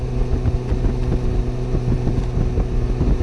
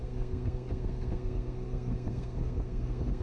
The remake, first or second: second